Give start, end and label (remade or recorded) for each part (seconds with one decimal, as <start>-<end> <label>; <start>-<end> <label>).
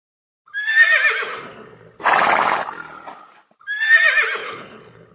0.0-4.4 recorded; 4.4-5.1 remade